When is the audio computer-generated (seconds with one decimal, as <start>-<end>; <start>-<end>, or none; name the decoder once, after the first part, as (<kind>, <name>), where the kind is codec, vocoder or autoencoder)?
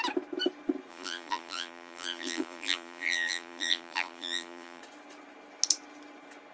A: 0.9-4.8 (vocoder, BigVGAN v2)